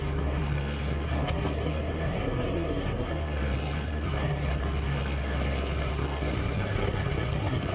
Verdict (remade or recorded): remade